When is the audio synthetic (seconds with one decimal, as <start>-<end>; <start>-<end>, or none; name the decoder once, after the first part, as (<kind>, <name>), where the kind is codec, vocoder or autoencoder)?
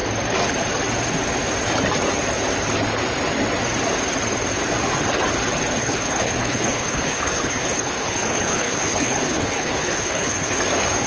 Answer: 5.8-10.6 (codec, HILCodec)